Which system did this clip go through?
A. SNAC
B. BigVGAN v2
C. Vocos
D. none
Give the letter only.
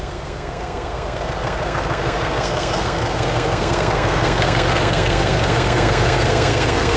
A